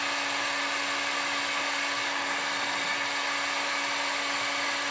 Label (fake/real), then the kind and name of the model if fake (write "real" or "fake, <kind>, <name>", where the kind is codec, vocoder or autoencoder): real